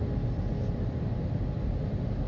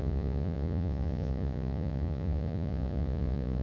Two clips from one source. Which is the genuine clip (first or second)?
first